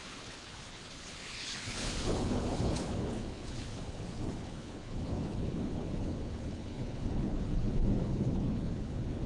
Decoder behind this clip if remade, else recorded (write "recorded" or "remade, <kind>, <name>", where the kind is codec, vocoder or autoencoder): remade, codec, HILCodec